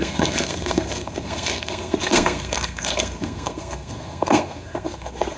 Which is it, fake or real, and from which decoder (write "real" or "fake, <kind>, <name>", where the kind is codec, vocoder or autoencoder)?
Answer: fake, codec, SNAC